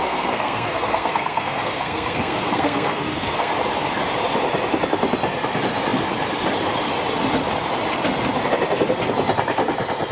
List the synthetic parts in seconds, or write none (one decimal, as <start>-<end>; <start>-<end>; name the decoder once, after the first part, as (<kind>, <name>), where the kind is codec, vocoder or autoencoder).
0.0-3.5 (codec, SNAC)